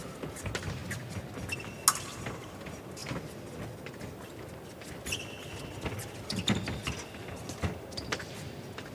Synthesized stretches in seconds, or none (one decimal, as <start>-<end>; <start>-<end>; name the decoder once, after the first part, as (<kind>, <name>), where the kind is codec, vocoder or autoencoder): none